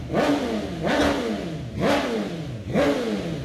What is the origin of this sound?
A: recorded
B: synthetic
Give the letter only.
A